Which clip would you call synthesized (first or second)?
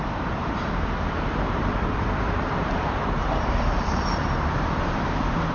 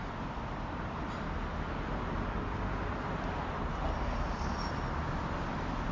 first